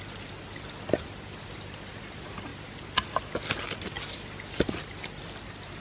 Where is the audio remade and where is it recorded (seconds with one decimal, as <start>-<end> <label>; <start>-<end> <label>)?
0.0-5.8 recorded